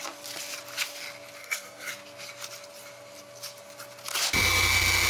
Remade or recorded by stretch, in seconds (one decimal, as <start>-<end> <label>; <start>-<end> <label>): 0.0-1.4 recorded; 1.4-1.9 remade; 1.9-5.1 recorded